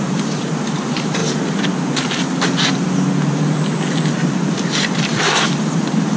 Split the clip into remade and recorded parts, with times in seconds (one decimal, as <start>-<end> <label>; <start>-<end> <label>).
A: 0.0-1.2 remade; 1.2-4.1 recorded; 4.1-6.2 remade